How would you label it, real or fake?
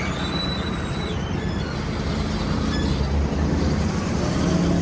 real